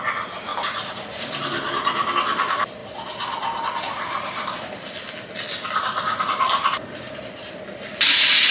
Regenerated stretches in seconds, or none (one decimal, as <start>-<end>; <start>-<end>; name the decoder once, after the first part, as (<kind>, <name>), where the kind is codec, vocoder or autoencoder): 0.5-2.1 (vocoder, BigVGAN v2)